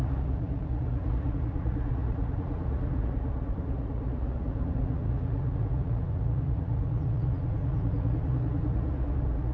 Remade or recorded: remade